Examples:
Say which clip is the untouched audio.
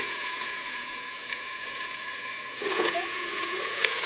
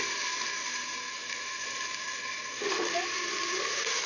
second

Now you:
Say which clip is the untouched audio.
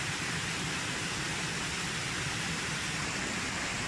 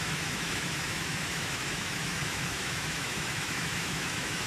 first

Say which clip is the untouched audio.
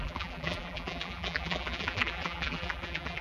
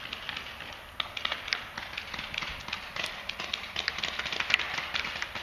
second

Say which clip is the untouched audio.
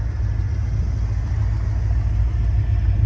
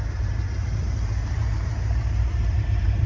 first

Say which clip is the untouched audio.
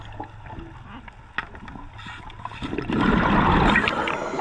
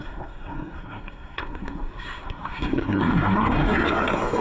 first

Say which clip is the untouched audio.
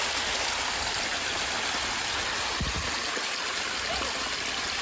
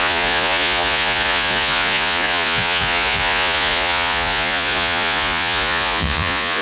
first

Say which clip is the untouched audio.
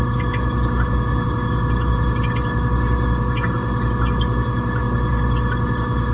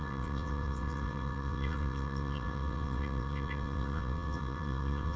first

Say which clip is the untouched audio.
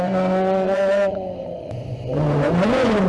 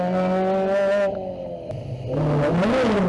second